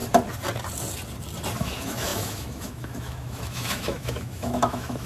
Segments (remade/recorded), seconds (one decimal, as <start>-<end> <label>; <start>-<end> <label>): 0.0-1.6 recorded; 1.6-5.1 remade

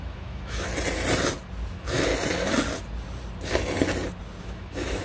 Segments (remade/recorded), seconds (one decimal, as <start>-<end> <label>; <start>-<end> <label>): 0.0-0.7 remade; 0.7-1.7 recorded; 1.7-2.1 remade; 2.1-4.4 recorded; 4.4-5.0 remade

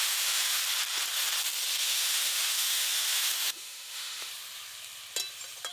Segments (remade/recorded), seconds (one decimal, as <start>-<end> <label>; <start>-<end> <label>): 0.0-0.6 remade; 0.6-1.8 recorded; 1.8-4.3 remade; 4.3-5.7 recorded

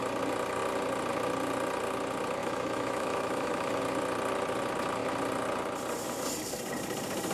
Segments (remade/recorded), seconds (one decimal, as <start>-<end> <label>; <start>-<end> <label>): 0.0-2.4 recorded; 2.4-3.8 remade; 3.8-7.3 recorded

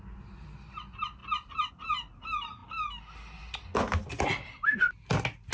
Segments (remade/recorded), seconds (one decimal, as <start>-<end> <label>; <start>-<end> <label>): 0.0-5.5 recorded

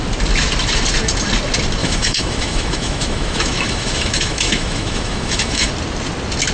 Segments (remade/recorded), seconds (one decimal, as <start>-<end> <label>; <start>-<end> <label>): 0.0-1.8 recorded; 1.8-5.7 remade; 5.7-6.5 recorded

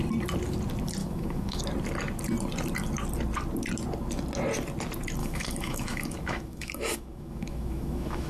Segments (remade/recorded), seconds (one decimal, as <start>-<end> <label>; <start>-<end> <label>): 0.0-1.0 recorded; 1.0-1.6 remade; 1.6-5.2 recorded; 5.2-8.3 remade

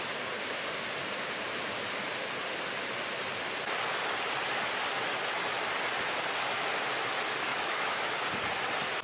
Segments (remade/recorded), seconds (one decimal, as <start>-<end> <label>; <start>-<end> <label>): 0.0-7.5 recorded; 7.5-8.2 remade; 8.2-9.0 recorded